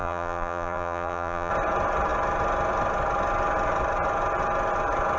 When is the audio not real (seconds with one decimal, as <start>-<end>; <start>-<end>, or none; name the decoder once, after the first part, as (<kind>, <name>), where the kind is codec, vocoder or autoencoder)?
0.0-1.5 (vocoder, BigVGAN v2)